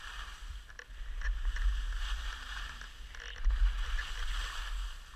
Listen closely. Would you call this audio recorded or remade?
recorded